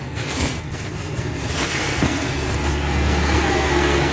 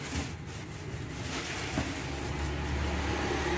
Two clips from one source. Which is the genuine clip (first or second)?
second